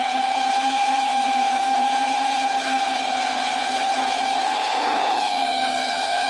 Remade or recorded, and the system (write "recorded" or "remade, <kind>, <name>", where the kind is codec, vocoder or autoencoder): remade, codec, HILCodec